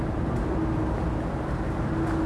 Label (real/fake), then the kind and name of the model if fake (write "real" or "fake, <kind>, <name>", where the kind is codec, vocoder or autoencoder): real